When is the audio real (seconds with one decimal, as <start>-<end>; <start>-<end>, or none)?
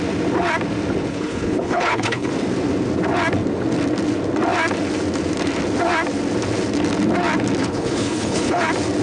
0.0-1.1; 2.3-7.6; 8.6-9.0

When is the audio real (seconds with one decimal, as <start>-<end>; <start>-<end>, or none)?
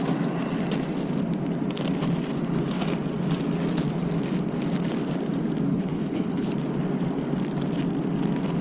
0.0-5.7; 6.5-8.6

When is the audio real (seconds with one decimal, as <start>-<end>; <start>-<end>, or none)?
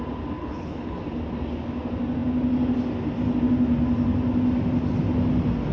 0.0-0.4; 1.0-5.7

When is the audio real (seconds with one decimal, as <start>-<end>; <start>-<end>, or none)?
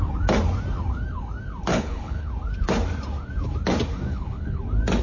0.0-1.7; 2.3-4.1; 4.6-5.0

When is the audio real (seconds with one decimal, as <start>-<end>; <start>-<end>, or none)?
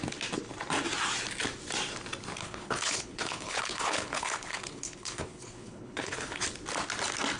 0.0-2.4; 6.4-7.4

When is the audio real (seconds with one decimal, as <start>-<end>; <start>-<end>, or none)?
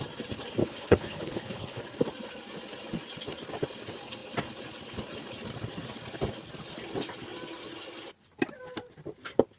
0.0-0.6; 1.8-9.6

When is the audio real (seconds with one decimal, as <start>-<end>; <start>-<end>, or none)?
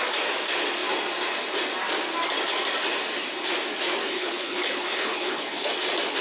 0.0-4.0; 5.7-6.2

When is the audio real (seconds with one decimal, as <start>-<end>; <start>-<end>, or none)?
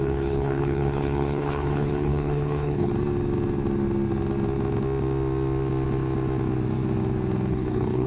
2.9-7.5